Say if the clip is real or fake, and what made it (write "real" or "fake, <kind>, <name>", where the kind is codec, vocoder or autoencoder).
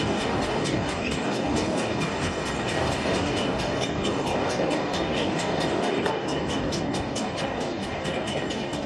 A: fake, codec, DAC